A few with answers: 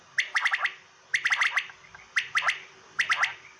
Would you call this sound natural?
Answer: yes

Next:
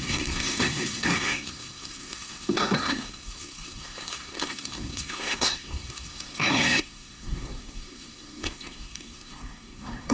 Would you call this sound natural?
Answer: no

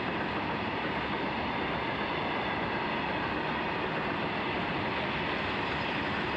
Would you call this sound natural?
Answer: yes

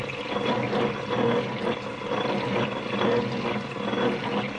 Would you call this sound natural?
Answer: yes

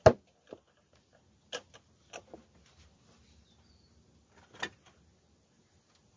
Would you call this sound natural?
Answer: yes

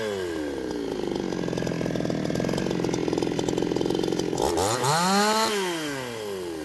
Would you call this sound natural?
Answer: yes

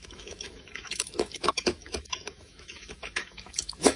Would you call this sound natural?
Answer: no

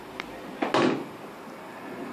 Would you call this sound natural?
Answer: yes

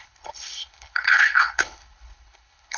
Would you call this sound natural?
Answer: no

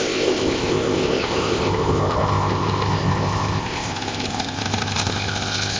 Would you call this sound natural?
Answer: no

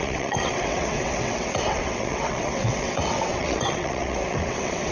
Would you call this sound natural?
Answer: no